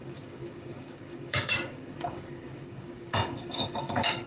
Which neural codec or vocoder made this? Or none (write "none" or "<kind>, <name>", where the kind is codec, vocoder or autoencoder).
codec, DAC